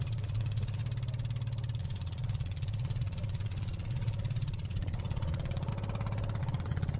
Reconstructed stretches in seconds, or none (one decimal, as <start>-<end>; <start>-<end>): 0.0-0.8; 1.8-5.7; 6.4-7.0